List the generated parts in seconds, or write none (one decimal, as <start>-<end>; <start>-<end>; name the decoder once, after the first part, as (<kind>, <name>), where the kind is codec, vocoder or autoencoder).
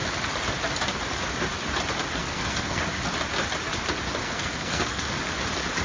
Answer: 2.2-2.8 (codec, SNAC); 4.2-5.1